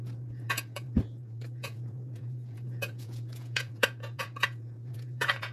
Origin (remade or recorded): remade